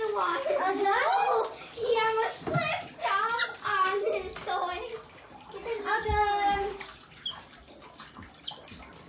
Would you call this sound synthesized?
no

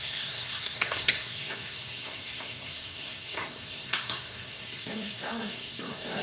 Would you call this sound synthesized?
yes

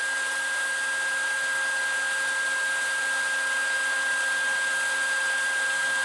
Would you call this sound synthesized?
no